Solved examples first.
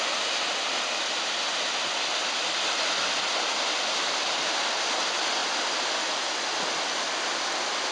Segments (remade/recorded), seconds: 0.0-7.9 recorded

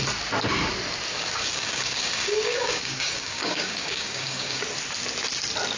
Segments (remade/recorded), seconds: 0.0-1.1 recorded; 1.1-4.6 remade; 4.6-5.8 recorded

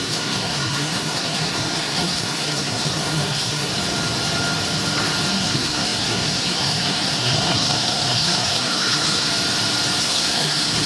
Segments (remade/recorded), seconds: 0.0-3.7 remade; 3.7-5.3 recorded; 5.3-9.3 remade; 9.3-10.0 recorded; 10.0-10.9 remade

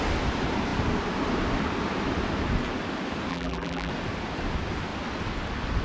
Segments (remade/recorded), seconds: 0.0-3.3 recorded; 3.3-3.9 remade; 3.9-5.8 recorded

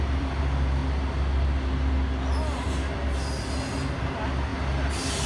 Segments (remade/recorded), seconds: 0.0-0.8 remade; 0.8-4.0 recorded; 4.0-4.5 remade; 4.5-5.3 recorded

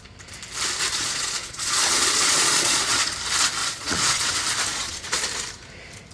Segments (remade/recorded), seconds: 0.0-0.9 recorded; 0.9-3.1 remade; 3.1-3.6 recorded; 3.6-4.3 remade; 4.3-4.7 recorded; 4.7-5.2 remade; 5.2-6.1 recorded

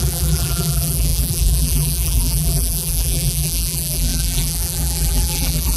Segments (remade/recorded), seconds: 0.0-5.8 remade